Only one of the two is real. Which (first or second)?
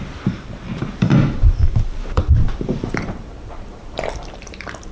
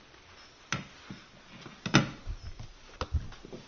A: second